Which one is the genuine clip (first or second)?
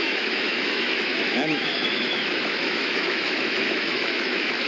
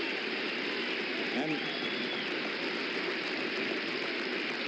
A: second